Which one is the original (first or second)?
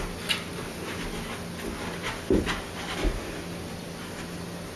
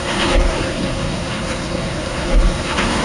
first